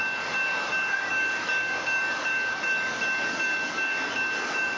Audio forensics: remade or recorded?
remade